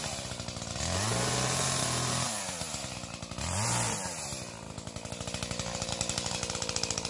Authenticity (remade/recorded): recorded